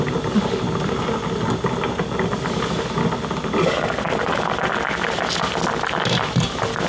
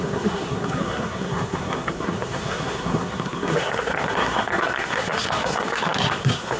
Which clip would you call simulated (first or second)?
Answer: second